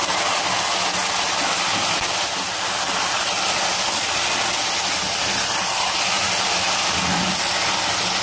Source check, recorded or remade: recorded